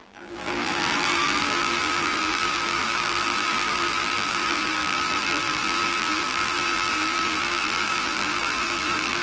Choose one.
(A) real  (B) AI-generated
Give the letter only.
B